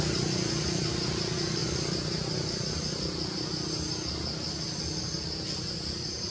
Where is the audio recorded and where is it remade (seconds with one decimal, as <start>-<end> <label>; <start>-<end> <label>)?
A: 0.0-6.3 recorded